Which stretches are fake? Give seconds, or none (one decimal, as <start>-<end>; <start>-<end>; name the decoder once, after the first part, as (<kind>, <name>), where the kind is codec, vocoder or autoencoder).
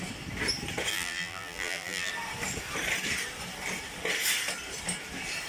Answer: 0.9-2.1 (vocoder, BigVGAN v2)